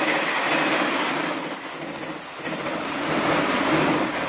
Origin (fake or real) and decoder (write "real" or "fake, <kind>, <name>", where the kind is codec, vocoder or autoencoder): real